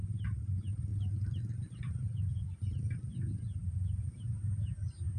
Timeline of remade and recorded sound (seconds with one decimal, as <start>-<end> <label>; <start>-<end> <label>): 0.0-5.2 recorded